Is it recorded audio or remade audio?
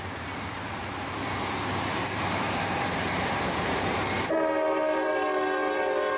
remade